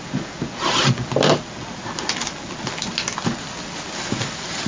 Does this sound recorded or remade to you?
recorded